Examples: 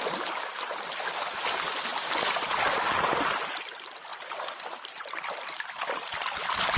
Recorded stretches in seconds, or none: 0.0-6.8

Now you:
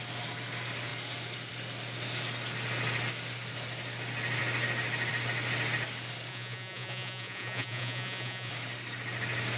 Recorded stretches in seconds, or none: 0.0-6.3; 8.5-9.6

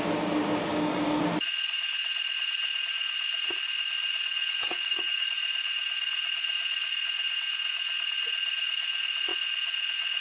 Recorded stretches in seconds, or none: 0.0-0.7; 1.2-4.7; 5.3-10.2